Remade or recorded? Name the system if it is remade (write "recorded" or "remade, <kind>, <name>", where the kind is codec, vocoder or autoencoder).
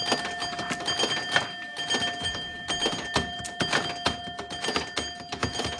recorded